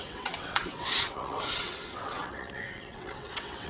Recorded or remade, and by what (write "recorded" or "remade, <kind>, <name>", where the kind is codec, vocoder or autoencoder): remade, vocoder, WaveNeXt